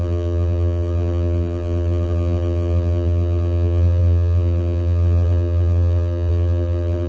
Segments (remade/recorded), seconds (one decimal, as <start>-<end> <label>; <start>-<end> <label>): 0.0-7.1 remade